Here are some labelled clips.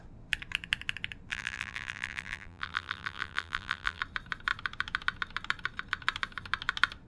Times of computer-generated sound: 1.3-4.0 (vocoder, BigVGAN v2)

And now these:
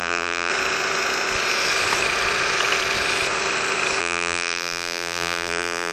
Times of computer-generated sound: 0.0-0.5 (vocoder, BigVGAN v2); 4.0-5.9

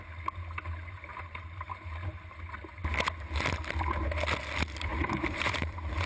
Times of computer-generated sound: 1.1-1.9 (vocoder, BigVGAN v2); 4.9-6.1